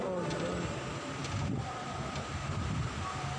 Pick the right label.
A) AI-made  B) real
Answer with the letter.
B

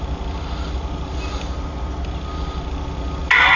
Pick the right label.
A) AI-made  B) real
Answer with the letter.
B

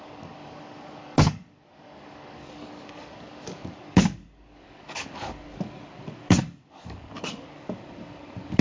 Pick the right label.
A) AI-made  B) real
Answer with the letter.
A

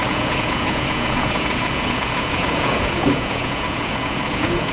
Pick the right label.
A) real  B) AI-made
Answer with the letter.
B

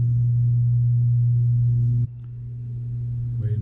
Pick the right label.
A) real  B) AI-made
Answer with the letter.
A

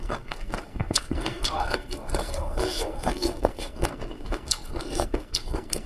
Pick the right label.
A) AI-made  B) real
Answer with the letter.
A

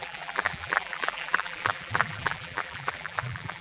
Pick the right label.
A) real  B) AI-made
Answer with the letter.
B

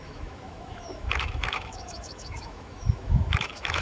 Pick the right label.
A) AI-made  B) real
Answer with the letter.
A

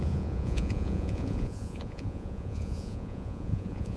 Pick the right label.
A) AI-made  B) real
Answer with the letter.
A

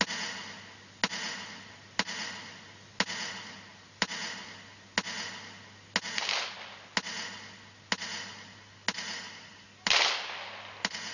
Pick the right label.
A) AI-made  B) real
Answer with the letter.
B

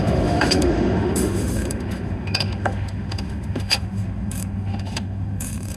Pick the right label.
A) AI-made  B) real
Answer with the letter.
A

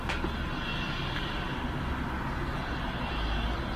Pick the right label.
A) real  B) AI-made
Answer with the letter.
A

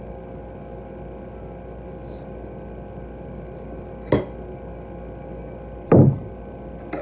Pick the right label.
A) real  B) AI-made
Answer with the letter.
A